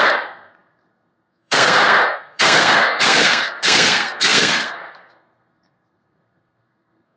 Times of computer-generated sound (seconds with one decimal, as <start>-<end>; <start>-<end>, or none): 0.0-7.2